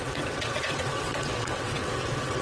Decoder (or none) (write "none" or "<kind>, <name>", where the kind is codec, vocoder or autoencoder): vocoder, WaveNeXt